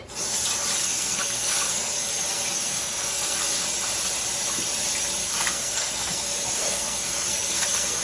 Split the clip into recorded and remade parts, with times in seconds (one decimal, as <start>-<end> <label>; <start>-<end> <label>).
0.0-0.8 recorded; 0.8-3.6 remade; 3.6-5.2 recorded; 5.2-8.0 remade